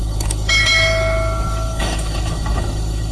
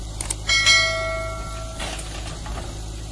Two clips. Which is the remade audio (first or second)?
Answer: first